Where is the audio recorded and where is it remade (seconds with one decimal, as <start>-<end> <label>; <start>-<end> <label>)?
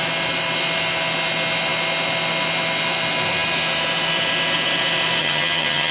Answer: 0.0-5.2 recorded; 5.2-5.9 remade